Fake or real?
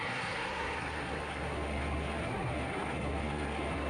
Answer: fake